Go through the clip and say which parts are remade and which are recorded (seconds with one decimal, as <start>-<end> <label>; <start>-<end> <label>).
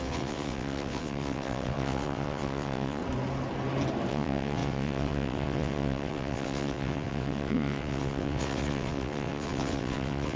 0.0-3.0 remade; 3.0-4.1 recorded; 4.1-10.4 remade